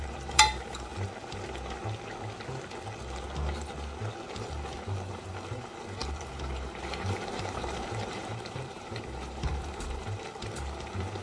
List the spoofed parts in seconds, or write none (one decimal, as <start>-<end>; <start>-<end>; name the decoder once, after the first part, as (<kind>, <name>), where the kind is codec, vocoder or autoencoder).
0.0-0.9 (vocoder, BigVGAN v2); 4.4-11.2